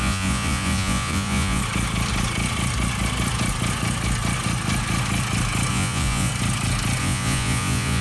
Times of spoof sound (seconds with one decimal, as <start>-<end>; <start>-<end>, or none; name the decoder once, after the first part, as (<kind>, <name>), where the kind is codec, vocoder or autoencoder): 0.0-1.6 (vocoder, Vocos); 5.7-6.3; 7.0-8.0